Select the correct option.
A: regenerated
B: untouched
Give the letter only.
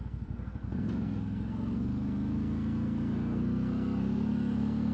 A